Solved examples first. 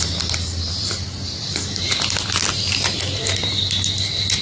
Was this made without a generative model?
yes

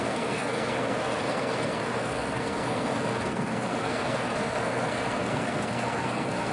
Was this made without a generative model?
no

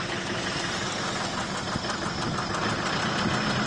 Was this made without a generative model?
yes